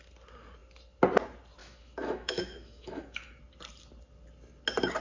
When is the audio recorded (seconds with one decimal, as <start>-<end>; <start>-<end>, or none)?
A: 0.0-1.6; 3.4-5.0